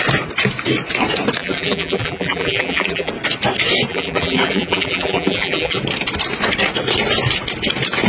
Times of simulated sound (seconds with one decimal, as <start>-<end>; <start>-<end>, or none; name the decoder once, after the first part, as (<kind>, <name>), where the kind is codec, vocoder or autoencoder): 1.4-3.1 (vocoder, BigVGAN v2); 3.9-5.8

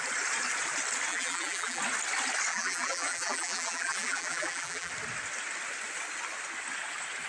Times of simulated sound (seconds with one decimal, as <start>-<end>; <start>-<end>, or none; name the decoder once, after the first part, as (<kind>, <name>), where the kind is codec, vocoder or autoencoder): 1.1-1.8 (vocoder, BigVGAN v2); 2.5-4.9